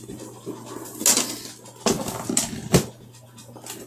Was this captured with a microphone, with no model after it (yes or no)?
yes